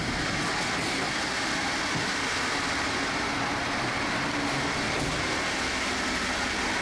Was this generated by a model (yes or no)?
no